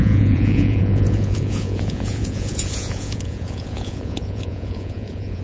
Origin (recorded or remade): remade